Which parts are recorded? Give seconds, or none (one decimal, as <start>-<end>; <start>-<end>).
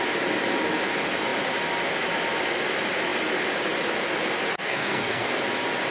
0.0-4.5; 5.4-5.9